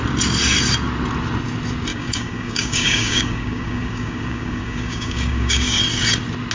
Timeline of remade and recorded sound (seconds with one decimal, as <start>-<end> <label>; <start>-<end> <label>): 0.0-1.9 recorded; 1.9-5.8 remade; 5.8-6.5 recorded